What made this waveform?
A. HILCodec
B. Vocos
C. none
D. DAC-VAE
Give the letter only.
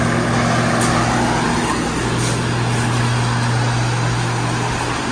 C